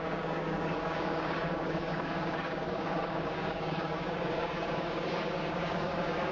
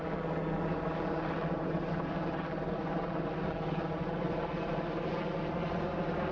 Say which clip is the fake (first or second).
first